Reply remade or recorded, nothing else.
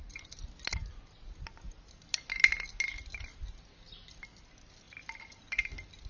recorded